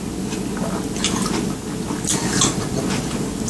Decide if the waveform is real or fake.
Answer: real